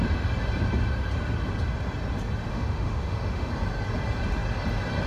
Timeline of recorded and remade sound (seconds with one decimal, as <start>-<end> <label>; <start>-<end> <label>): 0.0-2.5 recorded; 2.5-3.5 remade; 3.5-5.1 recorded